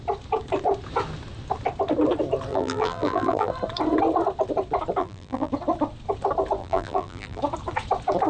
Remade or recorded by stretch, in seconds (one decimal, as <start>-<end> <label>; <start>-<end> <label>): 0.0-2.5 recorded; 2.5-3.5 remade; 3.5-5.0 recorded; 5.0-5.5 remade; 5.5-6.6 recorded; 6.6-7.4 remade; 7.4-8.3 recorded